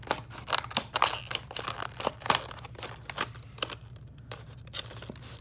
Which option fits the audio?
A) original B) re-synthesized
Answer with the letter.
A